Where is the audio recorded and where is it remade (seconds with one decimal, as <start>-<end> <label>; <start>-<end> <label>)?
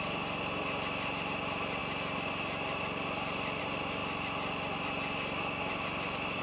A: 0.0-6.4 recorded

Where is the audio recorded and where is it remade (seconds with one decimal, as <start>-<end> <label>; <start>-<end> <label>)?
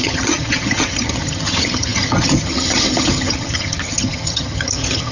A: 0.0-5.1 remade